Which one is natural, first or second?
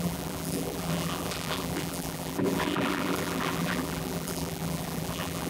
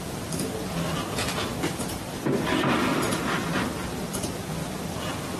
second